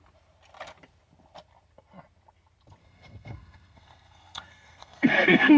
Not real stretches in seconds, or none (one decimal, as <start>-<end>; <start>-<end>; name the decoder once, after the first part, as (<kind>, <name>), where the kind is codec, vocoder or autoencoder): 2.8-5.6 (codec, SNAC)